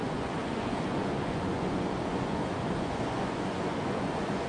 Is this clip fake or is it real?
fake